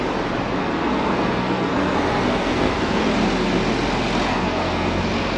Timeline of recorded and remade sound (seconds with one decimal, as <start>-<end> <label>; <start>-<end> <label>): 0.0-0.6 recorded; 0.6-3.0 remade; 3.0-4.3 recorded; 4.3-5.0 remade; 5.0-5.4 recorded